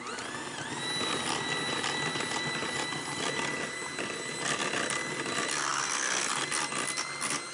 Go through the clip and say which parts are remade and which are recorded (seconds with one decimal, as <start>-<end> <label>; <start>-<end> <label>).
0.0-7.5 recorded